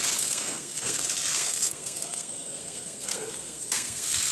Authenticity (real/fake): fake